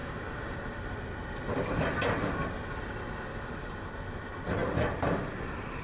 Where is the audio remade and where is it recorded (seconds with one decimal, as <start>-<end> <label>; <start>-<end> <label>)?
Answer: 0.0-0.6 remade; 0.6-4.6 recorded; 4.6-5.8 remade